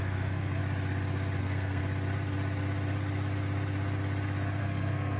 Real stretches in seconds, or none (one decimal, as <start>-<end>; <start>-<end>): 0.6-1.4; 1.8-4.6